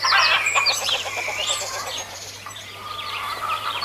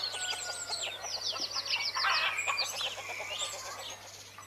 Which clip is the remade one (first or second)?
first